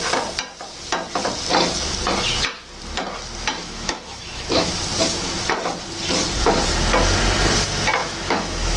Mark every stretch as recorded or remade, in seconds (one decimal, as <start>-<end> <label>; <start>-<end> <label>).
0.0-3.6 recorded; 3.6-4.7 remade; 4.7-8.0 recorded; 8.0-8.8 remade